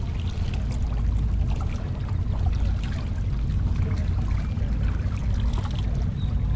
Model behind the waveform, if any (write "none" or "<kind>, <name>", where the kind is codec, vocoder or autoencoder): none